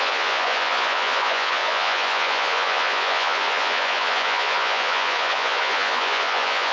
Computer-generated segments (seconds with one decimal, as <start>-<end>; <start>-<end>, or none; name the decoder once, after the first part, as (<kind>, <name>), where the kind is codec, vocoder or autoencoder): 0.0-6.7 (vocoder, Vocos)